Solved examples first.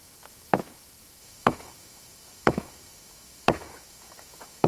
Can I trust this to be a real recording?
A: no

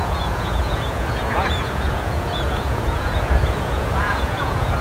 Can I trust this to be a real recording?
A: no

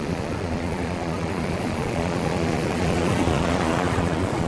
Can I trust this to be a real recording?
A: no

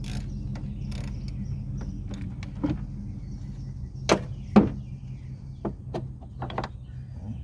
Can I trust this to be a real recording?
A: yes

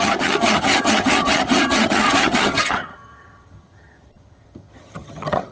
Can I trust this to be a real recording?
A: no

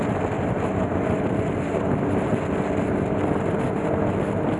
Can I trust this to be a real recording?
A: yes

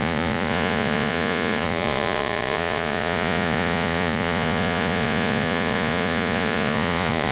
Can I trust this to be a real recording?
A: no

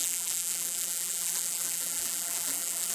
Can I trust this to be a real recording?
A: no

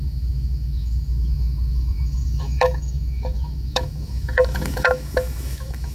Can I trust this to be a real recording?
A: no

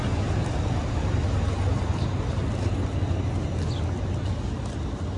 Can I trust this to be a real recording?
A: yes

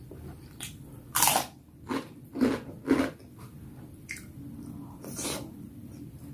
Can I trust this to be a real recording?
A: no